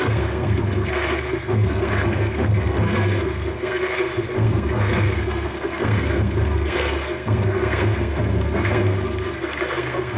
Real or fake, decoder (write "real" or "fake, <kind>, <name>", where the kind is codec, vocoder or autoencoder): fake, codec, SNAC